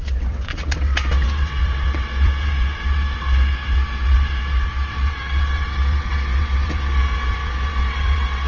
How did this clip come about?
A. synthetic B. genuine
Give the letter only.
A